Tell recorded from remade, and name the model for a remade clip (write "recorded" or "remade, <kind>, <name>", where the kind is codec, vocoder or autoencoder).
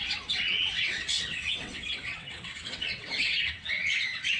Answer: remade, vocoder, WaveNeXt